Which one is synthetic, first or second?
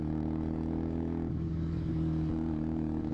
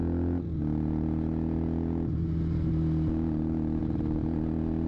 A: first